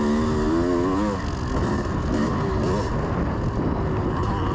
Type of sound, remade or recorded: recorded